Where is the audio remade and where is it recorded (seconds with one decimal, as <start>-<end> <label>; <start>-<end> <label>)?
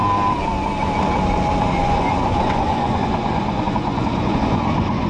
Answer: 0.0-1.8 recorded; 1.8-5.1 remade